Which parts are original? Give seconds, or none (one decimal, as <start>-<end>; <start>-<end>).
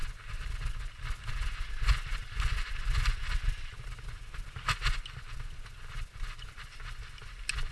0.0-7.7